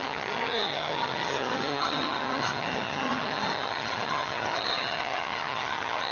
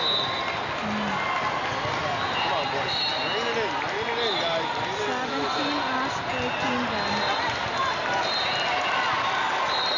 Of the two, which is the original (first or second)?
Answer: second